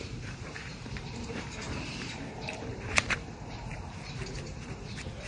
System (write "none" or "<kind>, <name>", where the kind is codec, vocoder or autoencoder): vocoder, BigVGAN v2